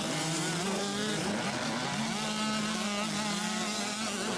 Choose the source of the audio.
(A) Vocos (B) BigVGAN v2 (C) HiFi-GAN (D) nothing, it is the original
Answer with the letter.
D